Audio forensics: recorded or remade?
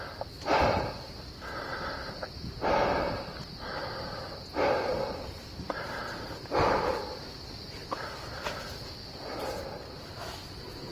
recorded